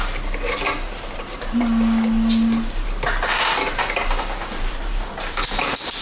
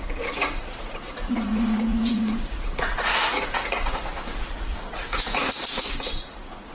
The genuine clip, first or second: first